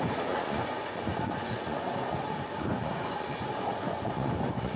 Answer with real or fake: fake